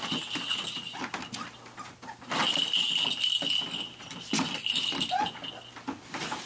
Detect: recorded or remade recorded